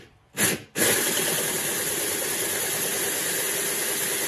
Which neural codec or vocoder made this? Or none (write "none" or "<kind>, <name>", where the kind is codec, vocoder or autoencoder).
none